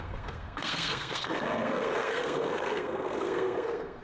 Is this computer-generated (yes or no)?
yes